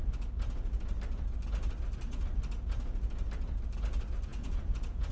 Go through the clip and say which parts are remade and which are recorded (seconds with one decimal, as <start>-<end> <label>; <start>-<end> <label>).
0.0-4.3 recorded; 4.3-5.1 remade